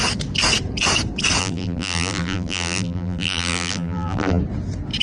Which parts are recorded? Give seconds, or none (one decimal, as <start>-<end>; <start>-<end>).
0.0-1.4; 4.4-5.0